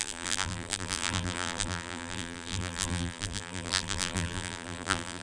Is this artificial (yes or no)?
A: yes